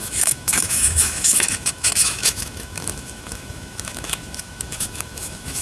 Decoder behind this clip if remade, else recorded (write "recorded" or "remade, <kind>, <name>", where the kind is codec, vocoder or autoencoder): remade, autoencoder, DAC-VAE